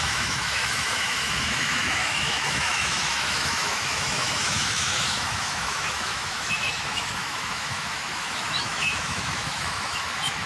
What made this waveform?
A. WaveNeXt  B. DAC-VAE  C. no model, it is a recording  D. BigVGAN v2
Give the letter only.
B